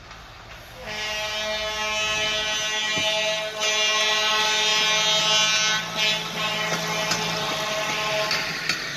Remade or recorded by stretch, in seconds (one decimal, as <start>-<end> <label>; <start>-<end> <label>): 0.0-9.0 recorded